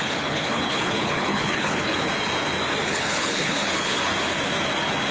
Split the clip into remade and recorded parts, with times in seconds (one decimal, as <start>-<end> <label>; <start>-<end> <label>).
0.0-2.1 remade; 2.1-2.8 recorded; 2.8-4.1 remade; 4.1-5.1 recorded